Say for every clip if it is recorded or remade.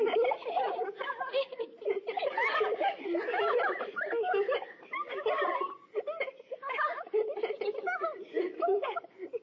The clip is recorded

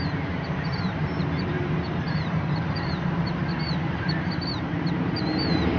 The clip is remade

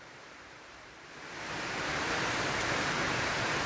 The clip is remade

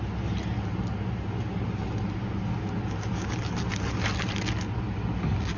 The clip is recorded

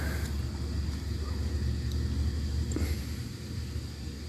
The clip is recorded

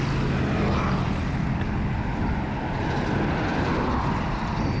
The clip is recorded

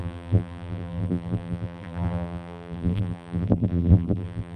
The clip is remade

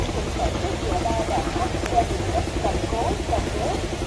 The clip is recorded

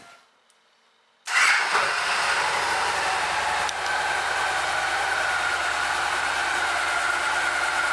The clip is recorded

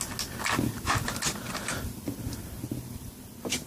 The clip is recorded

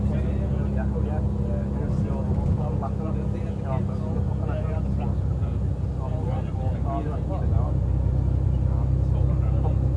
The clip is recorded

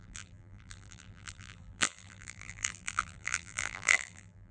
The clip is remade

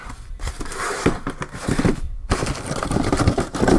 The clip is recorded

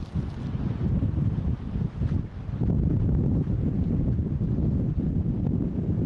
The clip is recorded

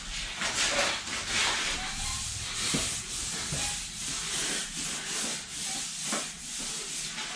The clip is recorded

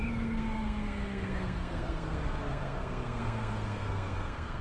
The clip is remade